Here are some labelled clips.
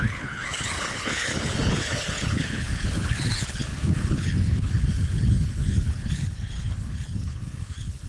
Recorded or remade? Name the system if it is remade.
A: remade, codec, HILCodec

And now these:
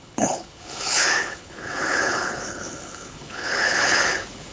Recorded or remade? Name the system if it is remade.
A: remade, codec, HILCodec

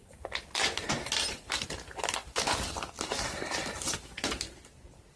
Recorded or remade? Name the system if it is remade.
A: recorded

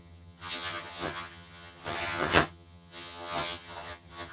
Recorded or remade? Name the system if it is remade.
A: remade, vocoder, HiFi-GAN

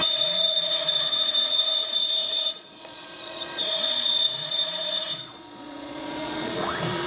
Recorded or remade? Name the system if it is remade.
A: remade, vocoder, Vocos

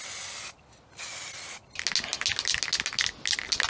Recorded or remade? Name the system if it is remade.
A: recorded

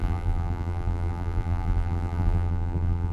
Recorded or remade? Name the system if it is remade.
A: remade, vocoder, BigVGAN v2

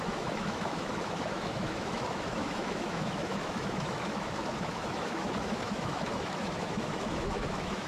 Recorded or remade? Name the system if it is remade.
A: remade, autoencoder, DAC-VAE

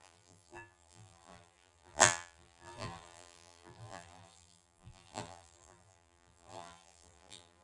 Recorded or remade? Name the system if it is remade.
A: remade, vocoder, BigVGAN v2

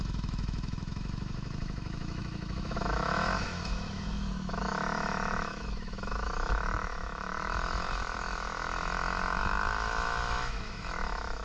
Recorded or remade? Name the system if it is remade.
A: remade, autoencoder, DAC-VAE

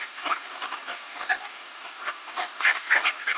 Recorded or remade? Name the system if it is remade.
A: remade, codec, DAC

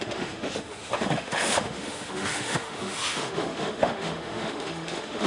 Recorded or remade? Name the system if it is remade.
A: remade, autoencoder, DAC-VAE